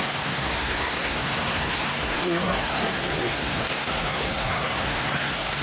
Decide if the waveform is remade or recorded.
remade